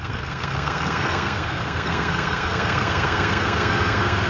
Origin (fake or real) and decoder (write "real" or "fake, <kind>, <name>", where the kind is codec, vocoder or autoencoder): fake, codec, SNAC